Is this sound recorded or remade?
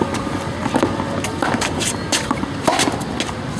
recorded